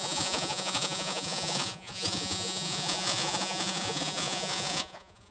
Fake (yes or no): yes